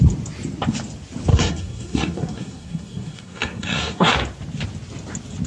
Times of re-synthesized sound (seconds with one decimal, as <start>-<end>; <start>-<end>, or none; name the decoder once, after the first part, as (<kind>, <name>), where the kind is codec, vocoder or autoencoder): 1.3-4.1 (codec, SNAC)